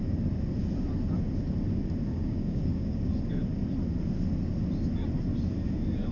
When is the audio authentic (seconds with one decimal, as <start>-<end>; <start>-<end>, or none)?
0.0-2.1; 3.1-6.1